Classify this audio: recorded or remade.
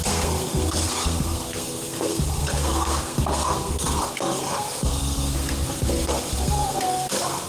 remade